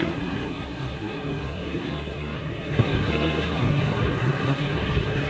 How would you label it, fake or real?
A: fake